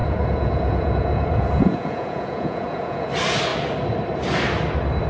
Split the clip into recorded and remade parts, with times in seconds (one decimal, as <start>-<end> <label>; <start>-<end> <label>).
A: 0.0-3.1 remade; 3.1-5.1 recorded